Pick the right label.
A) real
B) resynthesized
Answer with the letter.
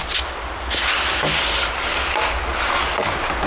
A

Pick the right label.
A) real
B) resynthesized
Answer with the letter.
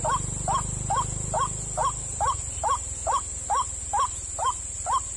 A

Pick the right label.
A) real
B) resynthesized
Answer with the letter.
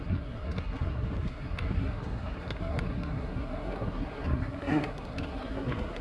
B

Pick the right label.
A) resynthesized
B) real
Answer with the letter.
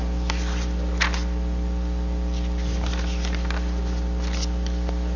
B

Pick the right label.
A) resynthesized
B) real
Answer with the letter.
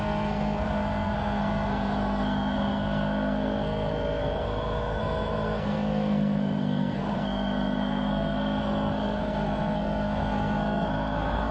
A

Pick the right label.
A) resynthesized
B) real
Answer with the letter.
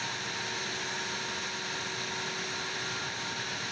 B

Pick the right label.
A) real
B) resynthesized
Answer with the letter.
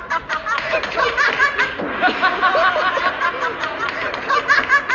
A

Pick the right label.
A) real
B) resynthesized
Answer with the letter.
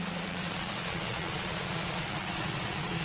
B